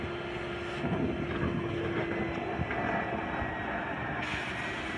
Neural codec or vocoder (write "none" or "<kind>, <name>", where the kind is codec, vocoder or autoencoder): none